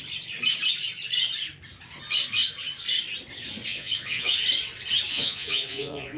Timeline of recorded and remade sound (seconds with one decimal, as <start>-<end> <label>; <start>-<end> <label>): 0.0-3.7 recorded; 3.7-4.4 remade; 4.4-5.1 recorded; 5.1-6.2 remade